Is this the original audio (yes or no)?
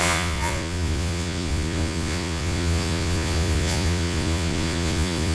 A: no